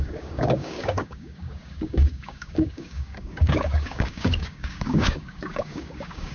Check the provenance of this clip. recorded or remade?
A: remade